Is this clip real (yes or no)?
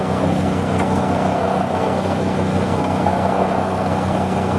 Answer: no